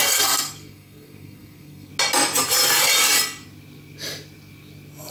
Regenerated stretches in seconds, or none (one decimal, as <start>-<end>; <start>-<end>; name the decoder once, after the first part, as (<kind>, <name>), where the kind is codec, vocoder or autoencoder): 0.0-1.9 (codec, SNAC)